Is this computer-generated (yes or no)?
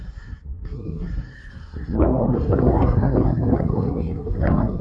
yes